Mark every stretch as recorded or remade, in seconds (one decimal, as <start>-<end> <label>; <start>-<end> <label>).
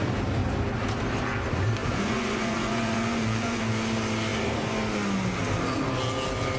0.0-1.8 recorded; 1.8-3.6 remade; 3.6-6.6 recorded